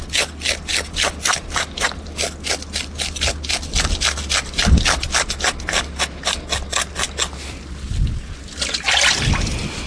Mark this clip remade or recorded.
recorded